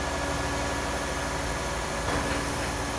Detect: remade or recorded recorded